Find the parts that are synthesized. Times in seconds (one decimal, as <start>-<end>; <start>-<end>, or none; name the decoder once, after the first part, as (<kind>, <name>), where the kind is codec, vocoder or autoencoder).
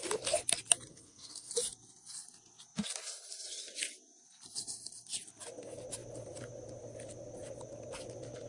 0.9-1.5 (codec, SNAC)